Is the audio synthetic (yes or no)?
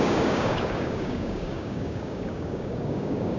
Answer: yes